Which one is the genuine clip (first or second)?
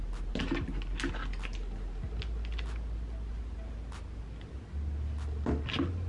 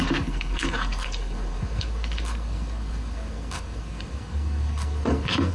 first